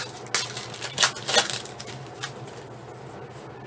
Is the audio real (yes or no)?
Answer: yes